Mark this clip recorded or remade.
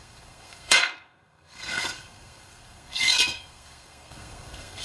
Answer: remade